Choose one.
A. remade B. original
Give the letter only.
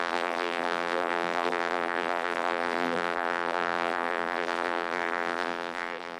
A